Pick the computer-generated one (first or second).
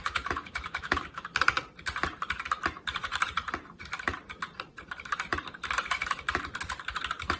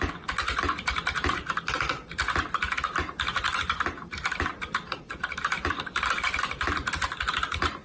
first